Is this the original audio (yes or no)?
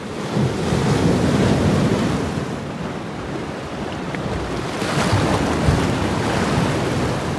yes